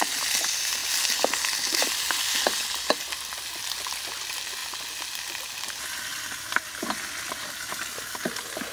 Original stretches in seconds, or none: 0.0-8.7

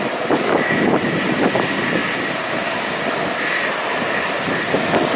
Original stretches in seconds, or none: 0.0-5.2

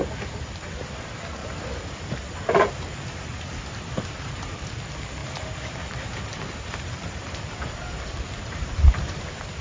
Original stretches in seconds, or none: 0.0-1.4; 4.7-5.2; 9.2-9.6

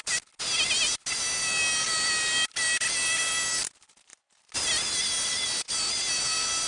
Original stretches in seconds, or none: 0.0-6.7

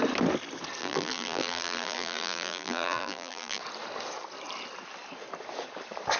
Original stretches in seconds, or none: 0.0-0.8; 3.6-6.2

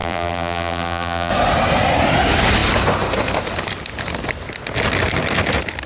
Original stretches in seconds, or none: 1.3-5.9